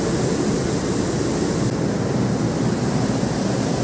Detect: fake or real real